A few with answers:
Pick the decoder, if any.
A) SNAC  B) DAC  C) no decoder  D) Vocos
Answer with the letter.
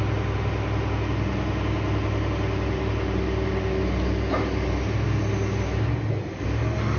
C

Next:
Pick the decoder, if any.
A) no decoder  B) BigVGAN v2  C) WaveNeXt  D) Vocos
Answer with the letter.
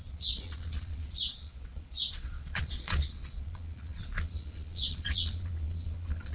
D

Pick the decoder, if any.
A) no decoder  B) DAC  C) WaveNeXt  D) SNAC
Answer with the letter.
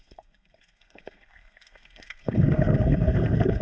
D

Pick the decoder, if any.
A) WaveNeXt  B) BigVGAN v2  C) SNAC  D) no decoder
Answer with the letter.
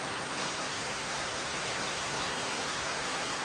C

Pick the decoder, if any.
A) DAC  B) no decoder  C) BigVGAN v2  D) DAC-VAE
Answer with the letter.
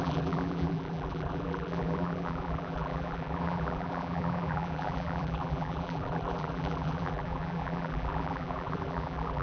C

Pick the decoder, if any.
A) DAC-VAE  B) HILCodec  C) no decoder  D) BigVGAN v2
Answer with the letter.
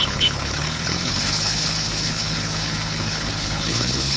B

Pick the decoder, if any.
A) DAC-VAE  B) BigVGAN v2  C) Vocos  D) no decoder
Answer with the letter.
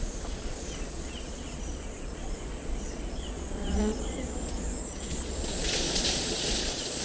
C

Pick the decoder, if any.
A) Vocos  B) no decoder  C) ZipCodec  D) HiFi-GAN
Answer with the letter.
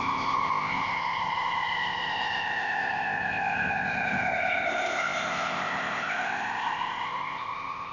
C